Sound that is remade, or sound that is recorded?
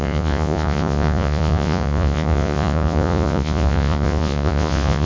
remade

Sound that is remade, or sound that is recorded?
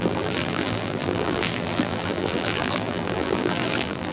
remade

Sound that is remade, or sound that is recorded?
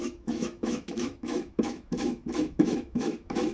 remade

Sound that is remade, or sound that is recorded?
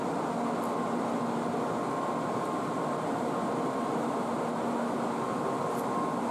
recorded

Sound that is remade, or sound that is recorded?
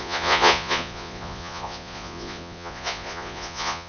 remade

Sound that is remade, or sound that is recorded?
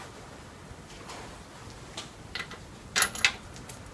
recorded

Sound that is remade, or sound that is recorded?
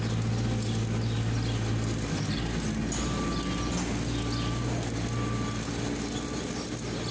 recorded